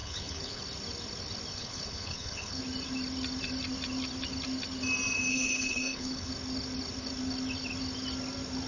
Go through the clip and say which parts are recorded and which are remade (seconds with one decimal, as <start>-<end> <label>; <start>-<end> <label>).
0.0-0.6 remade; 0.6-1.5 recorded; 1.5-2.6 remade; 2.6-5.3 recorded; 5.3-6.3 remade; 6.3-8.7 recorded